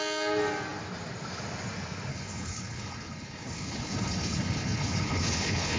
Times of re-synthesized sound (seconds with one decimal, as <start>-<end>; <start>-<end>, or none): 2.1-5.8

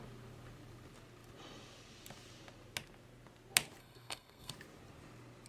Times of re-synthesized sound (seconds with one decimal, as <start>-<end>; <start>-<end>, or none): 3.8-4.5